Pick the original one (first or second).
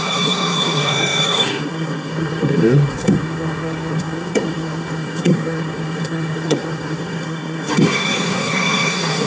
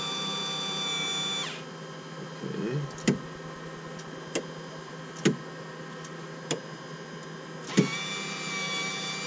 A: second